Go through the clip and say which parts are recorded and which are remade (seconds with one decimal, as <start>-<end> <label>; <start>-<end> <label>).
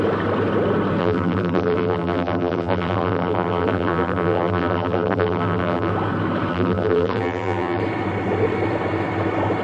0.0-1.0 recorded; 1.0-5.9 remade; 5.9-6.5 recorded; 6.5-7.8 remade; 7.8-9.6 recorded